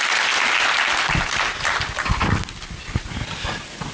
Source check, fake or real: real